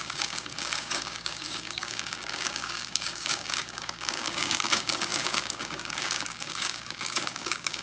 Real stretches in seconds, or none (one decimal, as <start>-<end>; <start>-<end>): none